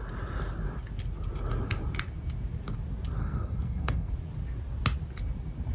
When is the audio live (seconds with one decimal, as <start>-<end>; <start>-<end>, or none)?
0.0-3.2; 4.1-5.7